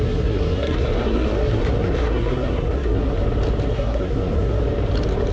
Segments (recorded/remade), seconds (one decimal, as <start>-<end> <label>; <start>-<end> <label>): 0.0-3.2 remade; 3.2-3.7 recorded; 3.7-4.6 remade; 4.6-5.3 recorded